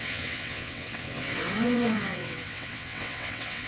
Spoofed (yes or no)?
yes